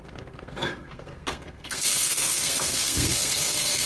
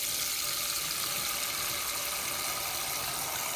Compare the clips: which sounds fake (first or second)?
first